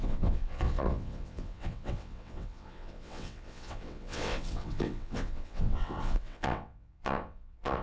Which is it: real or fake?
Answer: fake